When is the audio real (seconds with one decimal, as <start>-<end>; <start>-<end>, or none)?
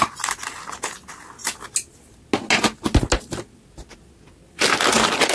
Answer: 0.0-5.3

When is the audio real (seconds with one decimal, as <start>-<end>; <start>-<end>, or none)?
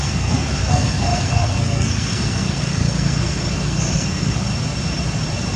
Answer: 4.5-5.6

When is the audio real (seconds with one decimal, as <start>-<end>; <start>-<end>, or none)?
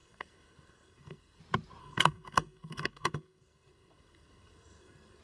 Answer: 1.4-1.8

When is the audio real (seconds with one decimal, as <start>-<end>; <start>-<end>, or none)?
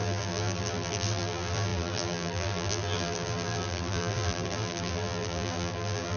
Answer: none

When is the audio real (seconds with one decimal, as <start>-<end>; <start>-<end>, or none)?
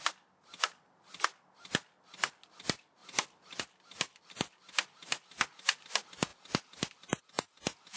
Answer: 0.0-8.0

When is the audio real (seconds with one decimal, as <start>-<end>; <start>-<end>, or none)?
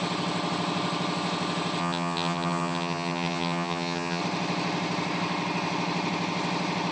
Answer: 0.0-1.8; 4.2-6.9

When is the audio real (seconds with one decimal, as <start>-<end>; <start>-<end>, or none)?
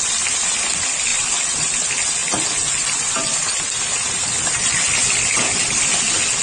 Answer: 0.0-1.1; 1.7-6.4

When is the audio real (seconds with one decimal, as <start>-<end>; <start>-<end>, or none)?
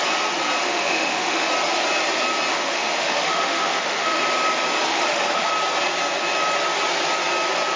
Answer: 0.0-0.6; 1.5-2.5; 4.2-4.9; 5.5-7.8